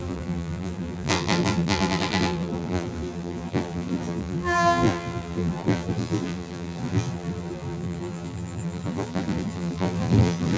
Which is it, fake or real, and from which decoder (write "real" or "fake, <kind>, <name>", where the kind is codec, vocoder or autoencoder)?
fake, vocoder, BigVGAN v2